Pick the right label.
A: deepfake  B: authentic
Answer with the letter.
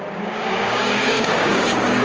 A